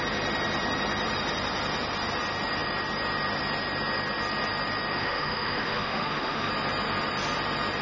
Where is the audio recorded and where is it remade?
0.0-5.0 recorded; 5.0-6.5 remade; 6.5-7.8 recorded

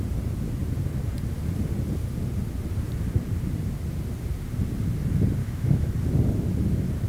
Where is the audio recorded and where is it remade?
0.0-5.4 recorded; 5.4-5.9 remade; 5.9-7.1 recorded

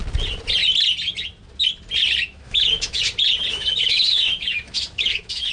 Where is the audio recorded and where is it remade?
0.0-2.3 recorded; 2.3-3.0 remade; 3.0-3.5 recorded; 3.5-5.5 remade

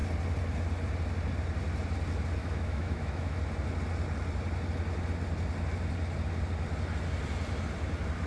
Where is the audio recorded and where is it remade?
0.0-2.4 recorded; 2.4-3.4 remade; 3.4-8.3 recorded

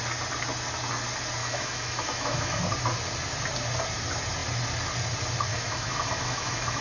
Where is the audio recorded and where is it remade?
0.0-1.4 recorded; 1.4-2.6 remade; 2.6-5.5 recorded; 5.5-6.8 remade

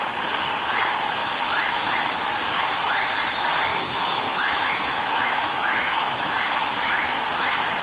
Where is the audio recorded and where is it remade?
0.0-3.7 recorded; 3.7-6.4 remade; 6.4-7.8 recorded

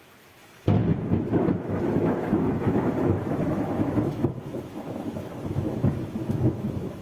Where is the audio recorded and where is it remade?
0.0-7.0 remade